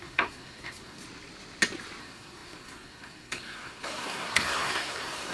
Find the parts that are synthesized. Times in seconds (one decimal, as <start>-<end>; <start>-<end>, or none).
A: 0.0-1.0; 2.0-5.3